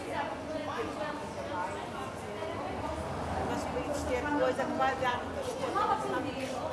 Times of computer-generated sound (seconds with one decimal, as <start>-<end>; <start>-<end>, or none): 0.0-1.1; 5.1-5.9